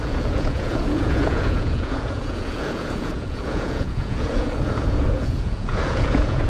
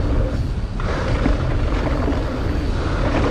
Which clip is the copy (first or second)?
first